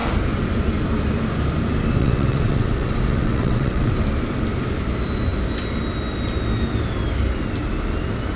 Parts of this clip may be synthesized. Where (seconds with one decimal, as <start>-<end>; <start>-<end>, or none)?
2.0-3.9